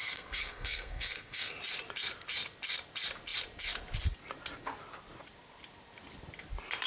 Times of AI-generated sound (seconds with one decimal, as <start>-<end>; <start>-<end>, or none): 0.0-1.6